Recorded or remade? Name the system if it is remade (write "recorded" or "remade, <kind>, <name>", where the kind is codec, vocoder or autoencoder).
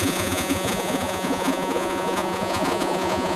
remade, vocoder, Vocos